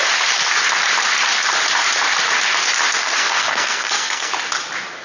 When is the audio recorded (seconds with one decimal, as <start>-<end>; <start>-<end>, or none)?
0.0-3.0; 4.3-5.0